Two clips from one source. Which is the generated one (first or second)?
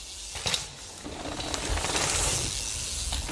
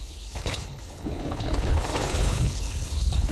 second